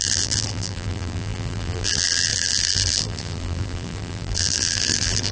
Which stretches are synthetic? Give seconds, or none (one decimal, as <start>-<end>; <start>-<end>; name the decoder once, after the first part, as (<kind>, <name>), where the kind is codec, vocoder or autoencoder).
0.0-5.3 (vocoder, BigVGAN v2)